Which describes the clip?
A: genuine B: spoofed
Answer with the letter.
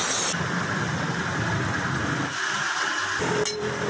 A